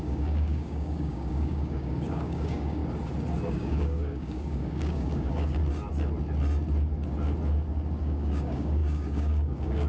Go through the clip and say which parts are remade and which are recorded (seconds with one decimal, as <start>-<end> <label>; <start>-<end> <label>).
0.0-2.8 remade; 2.8-3.5 recorded; 3.5-5.6 remade; 5.6-8.0 recorded; 8.0-9.9 remade